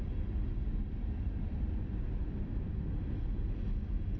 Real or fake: real